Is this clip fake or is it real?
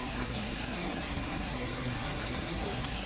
fake